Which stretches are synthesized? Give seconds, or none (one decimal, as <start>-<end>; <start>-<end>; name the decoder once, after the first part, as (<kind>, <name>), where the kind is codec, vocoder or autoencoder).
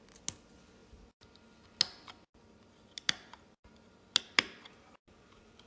none